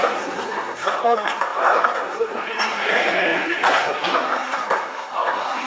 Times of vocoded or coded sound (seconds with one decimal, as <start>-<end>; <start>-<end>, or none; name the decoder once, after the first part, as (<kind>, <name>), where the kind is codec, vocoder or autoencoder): 0.0-5.7 (codec, SNAC)